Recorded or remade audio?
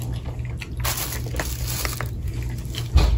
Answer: recorded